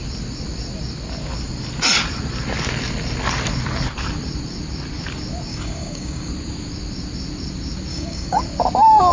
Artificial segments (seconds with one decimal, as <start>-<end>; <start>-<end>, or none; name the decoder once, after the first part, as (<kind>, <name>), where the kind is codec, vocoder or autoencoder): 5.5-6.3 (codec, DAC); 7.9-8.4